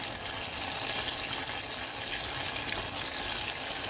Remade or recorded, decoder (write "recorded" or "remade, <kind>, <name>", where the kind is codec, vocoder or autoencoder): recorded